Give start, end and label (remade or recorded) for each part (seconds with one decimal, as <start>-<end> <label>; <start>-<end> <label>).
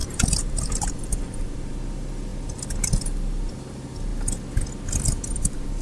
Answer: 0.0-4.1 remade; 4.1-5.3 recorded; 5.3-5.8 remade